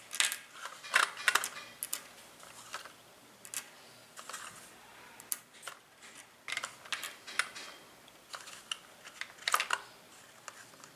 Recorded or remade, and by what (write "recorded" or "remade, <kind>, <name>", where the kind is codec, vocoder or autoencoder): recorded